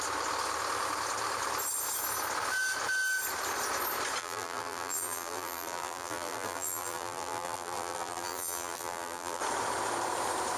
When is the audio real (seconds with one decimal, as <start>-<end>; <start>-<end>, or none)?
0.0-4.2; 9.4-10.6